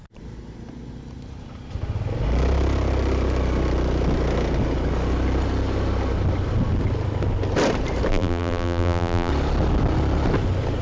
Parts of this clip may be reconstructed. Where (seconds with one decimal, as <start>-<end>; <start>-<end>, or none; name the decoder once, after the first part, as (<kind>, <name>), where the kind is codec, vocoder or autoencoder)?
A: 8.1-9.3 (vocoder, BigVGAN v2)